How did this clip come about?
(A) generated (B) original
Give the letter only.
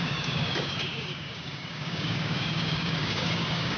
A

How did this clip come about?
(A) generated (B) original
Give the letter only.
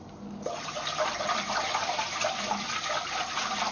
B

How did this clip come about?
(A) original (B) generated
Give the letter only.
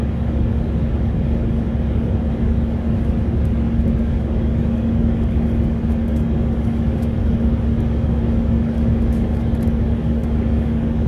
B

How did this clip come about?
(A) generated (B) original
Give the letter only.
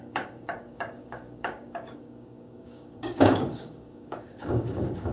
A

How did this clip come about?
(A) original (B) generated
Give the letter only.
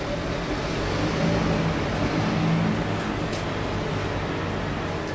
A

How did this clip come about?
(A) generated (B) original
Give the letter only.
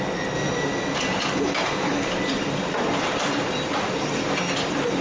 B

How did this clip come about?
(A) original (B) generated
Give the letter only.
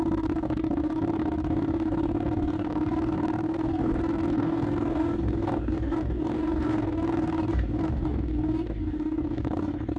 B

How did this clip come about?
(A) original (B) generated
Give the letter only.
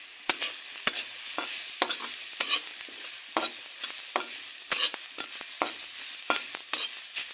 A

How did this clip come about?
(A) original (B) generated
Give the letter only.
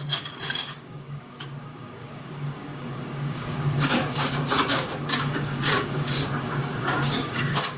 B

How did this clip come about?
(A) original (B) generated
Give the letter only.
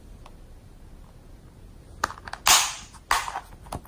A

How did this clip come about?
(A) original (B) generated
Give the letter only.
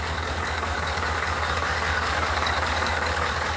B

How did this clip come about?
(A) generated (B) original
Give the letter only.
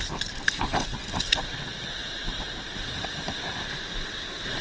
B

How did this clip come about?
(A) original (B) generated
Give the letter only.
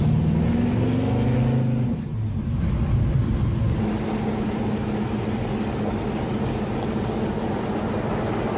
A